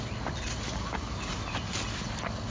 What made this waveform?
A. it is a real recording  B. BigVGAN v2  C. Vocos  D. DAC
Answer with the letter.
A